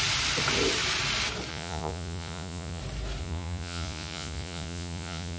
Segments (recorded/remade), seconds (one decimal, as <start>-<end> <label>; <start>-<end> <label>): 0.0-1.5 recorded; 1.5-2.8 remade; 2.8-3.2 recorded; 3.2-5.4 remade